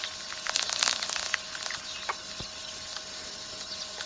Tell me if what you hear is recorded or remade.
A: recorded